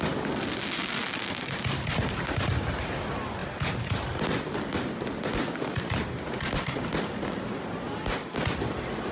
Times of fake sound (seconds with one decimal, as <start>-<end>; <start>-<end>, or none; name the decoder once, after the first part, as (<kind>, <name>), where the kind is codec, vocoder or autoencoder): none